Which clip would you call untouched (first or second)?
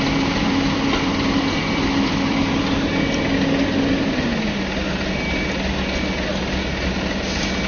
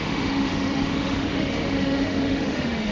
first